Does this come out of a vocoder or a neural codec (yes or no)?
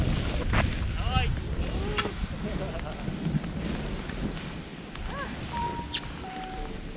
no